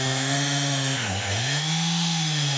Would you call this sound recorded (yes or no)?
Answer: no